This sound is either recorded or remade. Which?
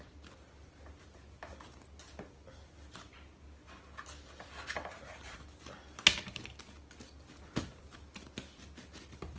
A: recorded